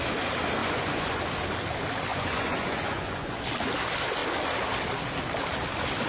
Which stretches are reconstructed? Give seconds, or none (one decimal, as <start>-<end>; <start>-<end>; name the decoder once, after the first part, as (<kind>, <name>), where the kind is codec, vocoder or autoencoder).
0.6-1.2 (vocoder, Vocos); 2.1-3.4